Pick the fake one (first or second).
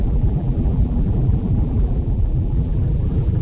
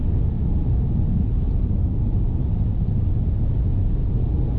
first